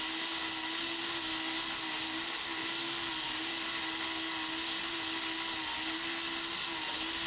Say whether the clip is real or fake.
real